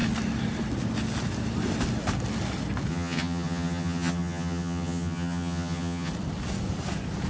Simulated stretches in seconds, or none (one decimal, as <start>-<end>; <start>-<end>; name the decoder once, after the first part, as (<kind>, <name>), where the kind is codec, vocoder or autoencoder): 2.9-6.1 (vocoder, HiFi-GAN)